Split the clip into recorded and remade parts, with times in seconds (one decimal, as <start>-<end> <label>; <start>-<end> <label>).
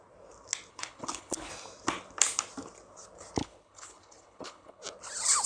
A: 0.0-0.7 recorded; 0.7-1.5 remade; 1.5-3.4 recorded; 3.4-4.8 remade; 4.8-5.5 recorded